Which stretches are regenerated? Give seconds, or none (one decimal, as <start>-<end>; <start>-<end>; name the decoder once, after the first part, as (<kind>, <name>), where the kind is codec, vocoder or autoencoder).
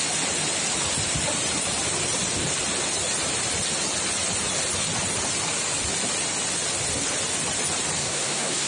8.0-8.7 (codec, SNAC)